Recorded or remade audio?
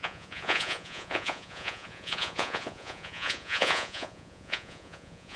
remade